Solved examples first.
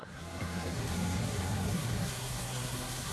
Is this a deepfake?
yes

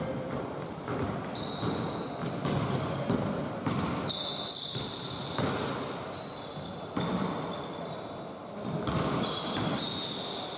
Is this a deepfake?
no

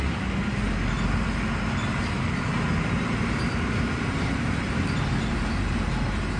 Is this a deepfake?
no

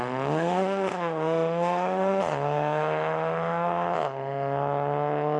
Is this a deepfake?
yes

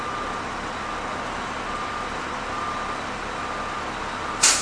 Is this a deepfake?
no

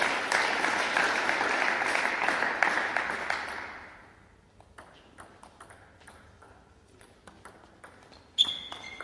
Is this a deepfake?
no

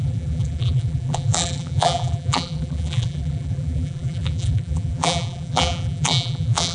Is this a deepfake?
yes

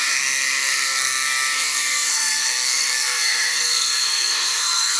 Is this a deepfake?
yes